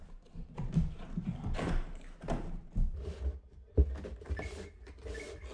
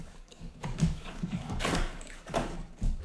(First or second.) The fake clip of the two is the second